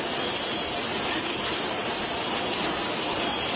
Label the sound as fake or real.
real